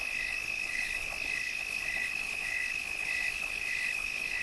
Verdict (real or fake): fake